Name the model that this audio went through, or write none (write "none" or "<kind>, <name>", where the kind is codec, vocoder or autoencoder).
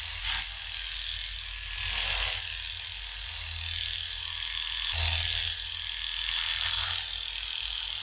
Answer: none